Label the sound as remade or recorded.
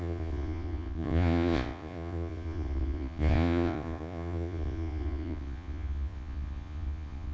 remade